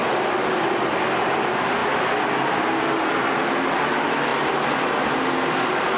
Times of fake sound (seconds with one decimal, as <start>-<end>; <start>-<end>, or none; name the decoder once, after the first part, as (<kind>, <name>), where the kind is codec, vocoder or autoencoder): none